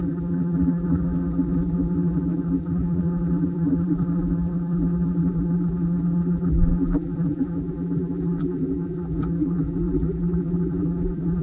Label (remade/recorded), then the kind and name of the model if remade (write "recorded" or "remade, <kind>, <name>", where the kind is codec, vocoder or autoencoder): remade, vocoder, BigVGAN v2